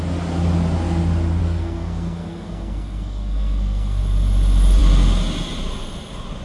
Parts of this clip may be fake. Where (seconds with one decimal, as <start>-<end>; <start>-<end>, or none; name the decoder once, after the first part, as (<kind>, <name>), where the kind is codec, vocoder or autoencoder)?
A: 1.4-4.0 (codec, SNAC)